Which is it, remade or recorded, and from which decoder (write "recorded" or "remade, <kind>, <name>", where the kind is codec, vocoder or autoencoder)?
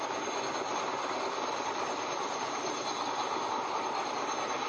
recorded